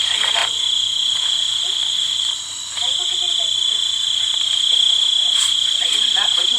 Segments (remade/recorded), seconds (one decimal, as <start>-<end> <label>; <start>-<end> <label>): 0.0-6.6 recorded